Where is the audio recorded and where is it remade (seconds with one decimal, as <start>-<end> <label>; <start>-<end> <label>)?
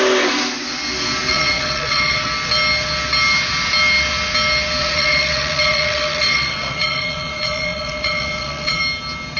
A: 0.0-1.3 recorded; 1.3-2.3 remade; 2.3-4.8 recorded; 4.8-8.8 remade; 8.8-9.4 recorded